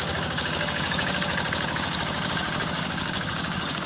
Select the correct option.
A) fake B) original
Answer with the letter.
A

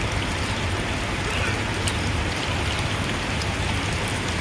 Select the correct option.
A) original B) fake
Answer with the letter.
A